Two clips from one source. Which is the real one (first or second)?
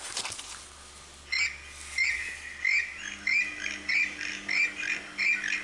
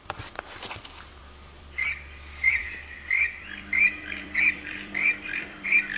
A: first